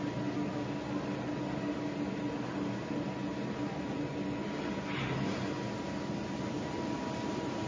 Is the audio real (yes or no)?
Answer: yes